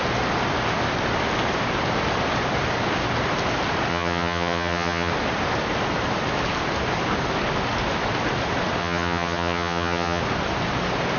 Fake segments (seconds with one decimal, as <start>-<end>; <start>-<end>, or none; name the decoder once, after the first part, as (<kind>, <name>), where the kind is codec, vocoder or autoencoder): 3.9-5.1 (vocoder, HiFi-GAN); 8.8-10.2